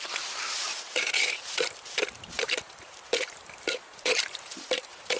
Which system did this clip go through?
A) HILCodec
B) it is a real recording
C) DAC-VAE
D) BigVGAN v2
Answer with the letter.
D